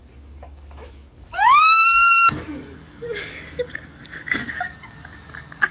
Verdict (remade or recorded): remade